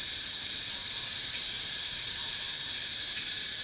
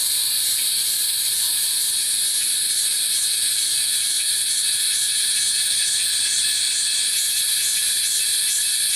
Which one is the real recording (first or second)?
second